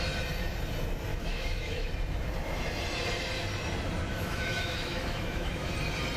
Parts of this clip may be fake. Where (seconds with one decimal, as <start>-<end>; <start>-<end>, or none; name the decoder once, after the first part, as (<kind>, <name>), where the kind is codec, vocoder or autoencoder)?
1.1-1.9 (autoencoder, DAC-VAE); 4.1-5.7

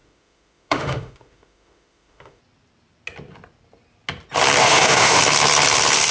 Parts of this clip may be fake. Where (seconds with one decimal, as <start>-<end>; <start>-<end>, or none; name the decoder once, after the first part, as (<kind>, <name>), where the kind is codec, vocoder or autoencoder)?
0.0-2.4 (autoencoder, DAC-VAE); 4.6-5.2

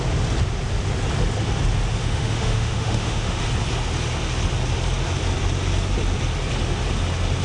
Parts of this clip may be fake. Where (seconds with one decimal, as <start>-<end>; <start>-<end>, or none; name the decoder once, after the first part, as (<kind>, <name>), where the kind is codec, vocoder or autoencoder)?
2.0-3.4 (autoencoder, DAC-VAE)